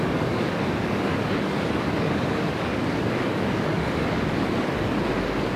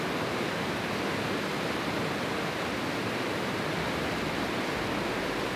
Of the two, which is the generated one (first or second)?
first